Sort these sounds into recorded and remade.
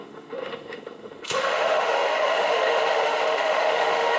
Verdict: remade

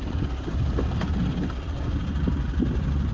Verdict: recorded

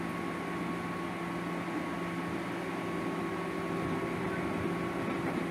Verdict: recorded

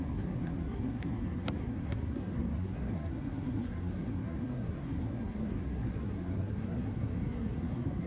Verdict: remade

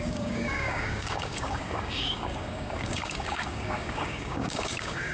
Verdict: remade